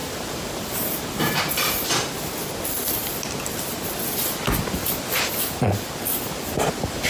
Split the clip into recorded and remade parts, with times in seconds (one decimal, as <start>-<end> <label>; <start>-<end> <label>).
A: 0.0-1.4 remade; 1.4-7.1 recorded